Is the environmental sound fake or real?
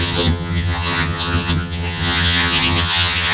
fake